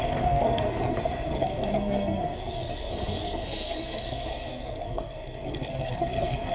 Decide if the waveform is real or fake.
fake